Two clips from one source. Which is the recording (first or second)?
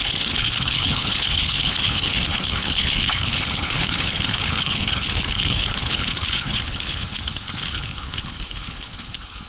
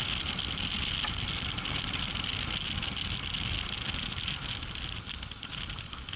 second